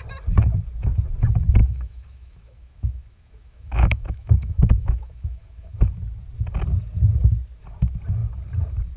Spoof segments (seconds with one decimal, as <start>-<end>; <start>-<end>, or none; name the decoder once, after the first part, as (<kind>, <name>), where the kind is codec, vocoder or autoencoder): 1.6-5.8 (autoencoder, DAC-VAE)